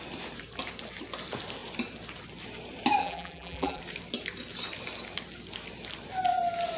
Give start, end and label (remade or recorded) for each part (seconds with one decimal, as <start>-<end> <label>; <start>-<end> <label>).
0.0-3.0 recorded; 3.0-3.8 remade; 3.8-6.8 recorded